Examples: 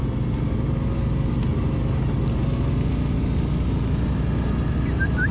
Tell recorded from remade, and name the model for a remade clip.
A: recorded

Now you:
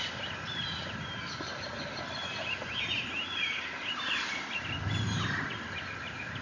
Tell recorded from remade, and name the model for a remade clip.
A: remade, vocoder, BigVGAN v2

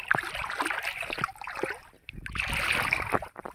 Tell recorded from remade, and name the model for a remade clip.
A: recorded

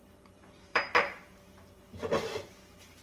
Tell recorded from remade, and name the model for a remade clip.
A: remade, vocoder, BigVGAN v2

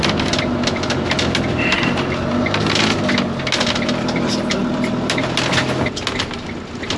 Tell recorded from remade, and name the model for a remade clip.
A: recorded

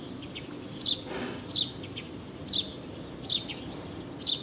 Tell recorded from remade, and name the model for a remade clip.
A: recorded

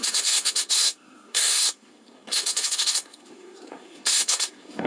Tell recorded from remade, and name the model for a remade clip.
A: remade, codec, SNAC